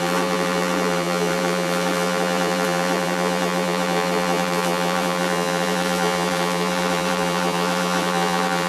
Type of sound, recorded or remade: remade